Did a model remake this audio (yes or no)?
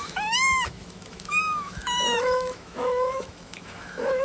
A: yes